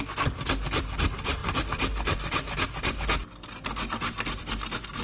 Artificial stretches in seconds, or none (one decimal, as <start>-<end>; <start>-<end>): none